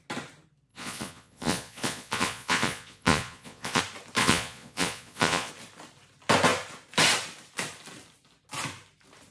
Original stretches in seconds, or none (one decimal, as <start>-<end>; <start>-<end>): 0.0-0.7; 3.8-4.2; 5.5-9.3